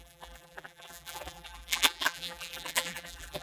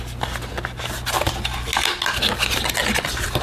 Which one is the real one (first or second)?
second